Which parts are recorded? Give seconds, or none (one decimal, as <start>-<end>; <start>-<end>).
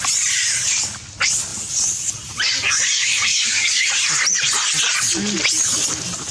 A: 0.0-3.3; 3.9-6.3